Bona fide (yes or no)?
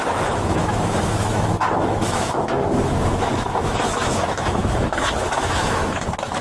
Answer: no